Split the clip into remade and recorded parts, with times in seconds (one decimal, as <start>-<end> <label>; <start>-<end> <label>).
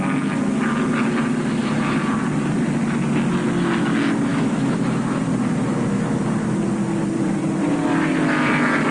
0.0-4.3 recorded; 4.3-5.2 remade; 5.2-8.9 recorded